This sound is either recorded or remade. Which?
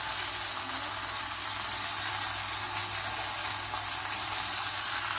recorded